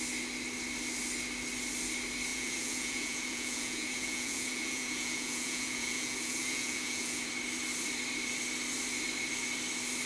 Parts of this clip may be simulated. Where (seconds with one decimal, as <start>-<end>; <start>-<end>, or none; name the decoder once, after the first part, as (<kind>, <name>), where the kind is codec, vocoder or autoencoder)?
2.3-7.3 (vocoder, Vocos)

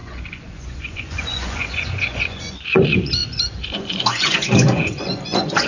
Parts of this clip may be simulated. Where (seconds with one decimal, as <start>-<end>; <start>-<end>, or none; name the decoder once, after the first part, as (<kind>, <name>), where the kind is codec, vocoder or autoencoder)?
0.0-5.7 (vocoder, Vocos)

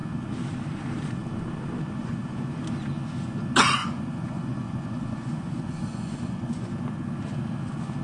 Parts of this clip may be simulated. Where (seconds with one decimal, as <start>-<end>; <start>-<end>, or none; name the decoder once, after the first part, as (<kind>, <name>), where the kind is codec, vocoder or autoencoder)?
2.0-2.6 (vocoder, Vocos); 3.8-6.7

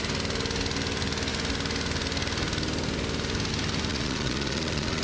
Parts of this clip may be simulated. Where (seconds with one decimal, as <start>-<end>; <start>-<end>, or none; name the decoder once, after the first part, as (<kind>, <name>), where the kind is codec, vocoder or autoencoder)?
3.9-5.0 (vocoder, Vocos)